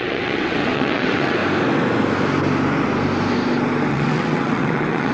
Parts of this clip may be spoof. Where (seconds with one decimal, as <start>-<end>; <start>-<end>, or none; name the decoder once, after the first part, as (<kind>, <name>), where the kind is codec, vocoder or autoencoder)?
0.0-1.4 (vocoder, WaveNeXt); 3.9-5.1